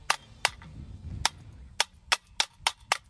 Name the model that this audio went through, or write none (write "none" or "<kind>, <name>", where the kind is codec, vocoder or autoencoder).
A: none